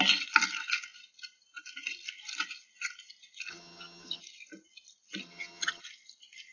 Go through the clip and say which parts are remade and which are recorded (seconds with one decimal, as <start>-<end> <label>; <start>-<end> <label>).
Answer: 0.0-3.5 recorded; 3.5-4.2 remade; 4.2-5.2 recorded; 5.2-5.8 remade; 5.8-6.5 recorded